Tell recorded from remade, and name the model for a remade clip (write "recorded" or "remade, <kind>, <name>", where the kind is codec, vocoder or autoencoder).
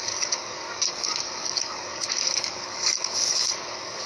remade, codec, DAC